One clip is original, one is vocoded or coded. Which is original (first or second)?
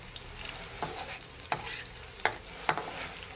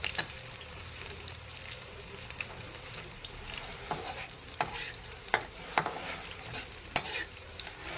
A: first